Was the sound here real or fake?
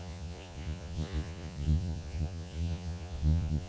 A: fake